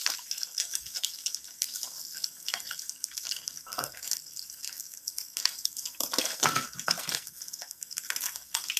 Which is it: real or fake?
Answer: fake